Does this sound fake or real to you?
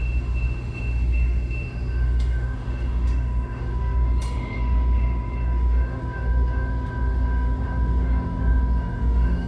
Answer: fake